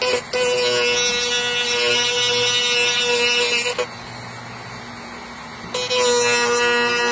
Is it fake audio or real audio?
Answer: real